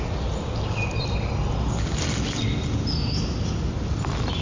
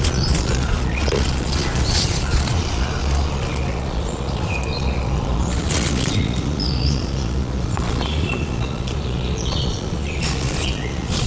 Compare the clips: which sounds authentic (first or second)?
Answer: first